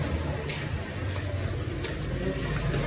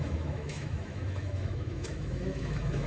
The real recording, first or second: first